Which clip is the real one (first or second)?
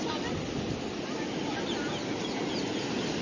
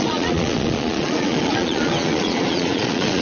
first